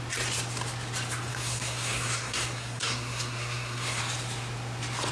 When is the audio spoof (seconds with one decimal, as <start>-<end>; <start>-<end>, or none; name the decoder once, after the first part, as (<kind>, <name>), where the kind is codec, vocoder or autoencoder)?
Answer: 1.3-4.0 (codec, SNAC)